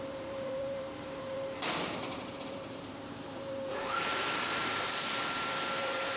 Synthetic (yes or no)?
yes